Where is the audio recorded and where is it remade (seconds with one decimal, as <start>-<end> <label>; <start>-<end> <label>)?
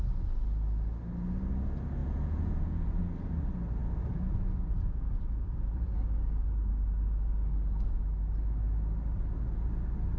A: 0.0-2.0 recorded; 2.0-3.0 remade; 3.0-3.8 recorded; 3.8-6.0 remade; 6.0-10.2 recorded